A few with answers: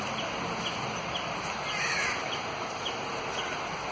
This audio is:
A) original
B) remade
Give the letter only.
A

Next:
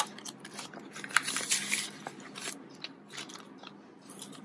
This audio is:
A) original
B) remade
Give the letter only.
A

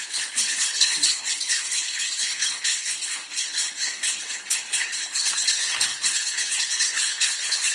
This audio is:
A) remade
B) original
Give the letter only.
A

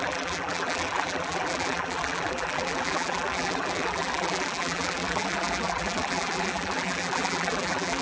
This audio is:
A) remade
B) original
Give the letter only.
A